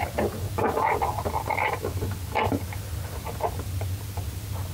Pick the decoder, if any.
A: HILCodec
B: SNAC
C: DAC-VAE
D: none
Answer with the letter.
D